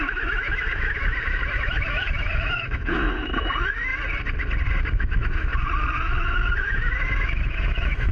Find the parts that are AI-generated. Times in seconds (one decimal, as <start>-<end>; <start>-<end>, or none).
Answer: 0.0-3.9; 4.9-5.5; 6.0-8.1